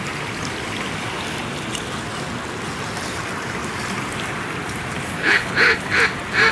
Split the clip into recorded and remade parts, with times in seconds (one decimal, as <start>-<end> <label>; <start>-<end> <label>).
0.0-5.2 recorded; 5.2-6.0 remade; 6.0-6.5 recorded